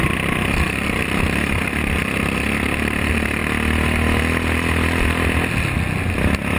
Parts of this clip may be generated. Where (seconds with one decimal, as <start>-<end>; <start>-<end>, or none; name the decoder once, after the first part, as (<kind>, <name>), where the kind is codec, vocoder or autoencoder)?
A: none